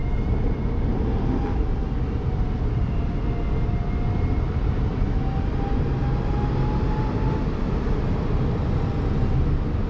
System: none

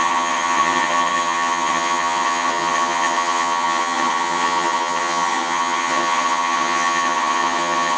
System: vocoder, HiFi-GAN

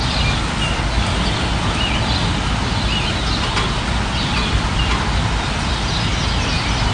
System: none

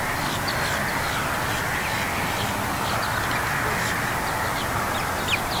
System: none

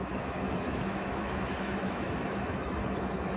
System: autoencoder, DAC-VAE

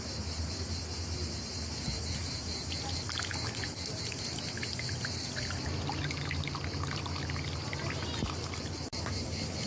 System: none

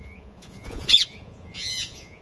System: vocoder, Vocos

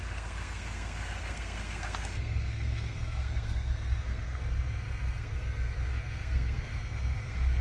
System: codec, SNAC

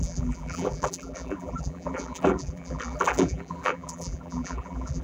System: vocoder, BigVGAN v2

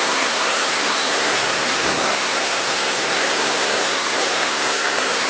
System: codec, SNAC